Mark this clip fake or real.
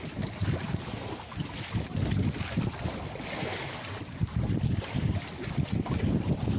real